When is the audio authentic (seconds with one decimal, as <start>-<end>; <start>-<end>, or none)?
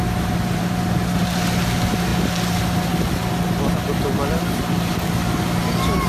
0.0-6.1